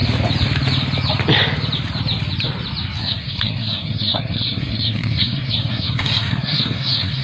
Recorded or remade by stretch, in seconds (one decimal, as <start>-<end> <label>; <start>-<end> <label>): 0.0-3.0 recorded; 3.0-7.2 remade